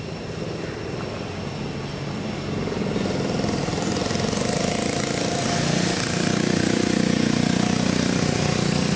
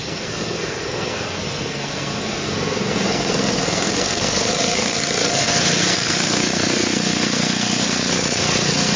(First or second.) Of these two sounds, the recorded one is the first